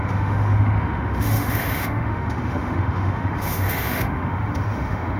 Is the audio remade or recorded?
remade